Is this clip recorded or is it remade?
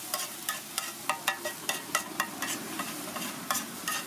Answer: recorded